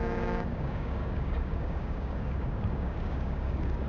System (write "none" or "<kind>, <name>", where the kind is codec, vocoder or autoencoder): codec, DAC